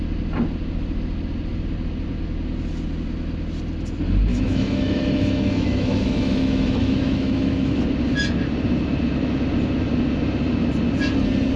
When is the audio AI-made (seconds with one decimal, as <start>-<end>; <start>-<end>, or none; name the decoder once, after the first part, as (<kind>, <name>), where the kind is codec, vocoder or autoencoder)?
4.3-7.8 (autoencoder, DAC-VAE)